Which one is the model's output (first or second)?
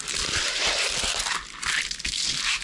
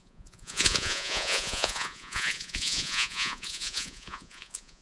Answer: second